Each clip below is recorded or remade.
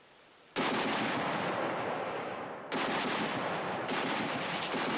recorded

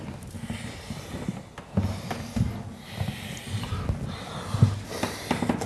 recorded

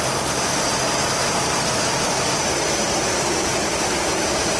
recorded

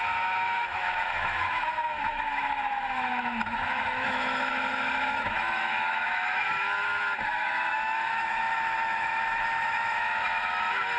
remade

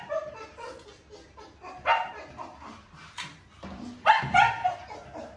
recorded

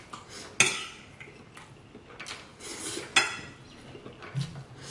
recorded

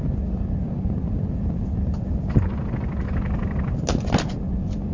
recorded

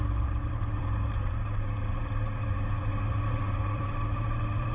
remade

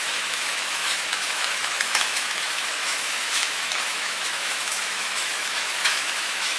remade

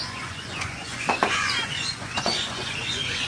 remade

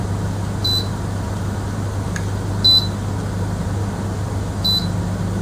recorded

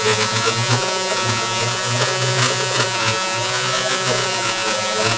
remade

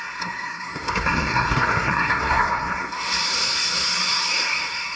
remade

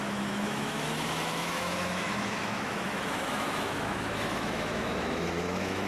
remade